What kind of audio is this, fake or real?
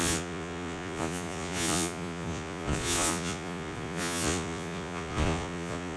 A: fake